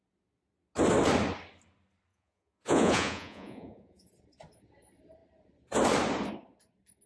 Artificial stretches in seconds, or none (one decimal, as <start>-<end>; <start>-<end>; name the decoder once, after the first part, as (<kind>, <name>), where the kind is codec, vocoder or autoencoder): 2.1-4.1 (vocoder, Vocos)